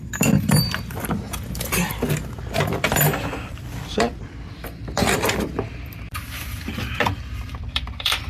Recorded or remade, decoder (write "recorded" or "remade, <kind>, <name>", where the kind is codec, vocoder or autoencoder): remade, vocoder, BigVGAN v2